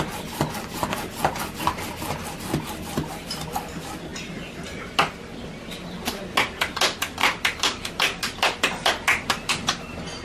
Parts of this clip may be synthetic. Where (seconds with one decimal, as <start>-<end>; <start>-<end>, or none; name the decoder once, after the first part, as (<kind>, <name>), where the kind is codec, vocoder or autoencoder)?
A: none